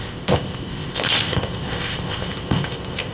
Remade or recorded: remade